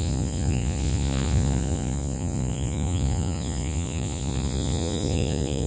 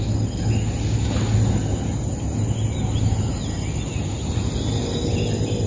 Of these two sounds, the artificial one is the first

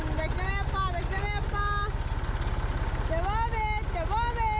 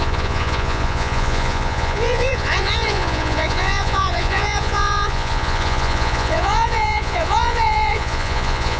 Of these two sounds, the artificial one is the second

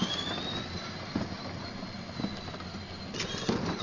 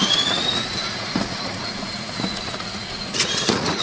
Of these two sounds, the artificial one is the second